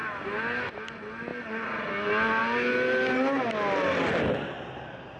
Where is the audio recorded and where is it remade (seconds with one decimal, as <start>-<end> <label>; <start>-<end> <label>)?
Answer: 0.0-5.2 recorded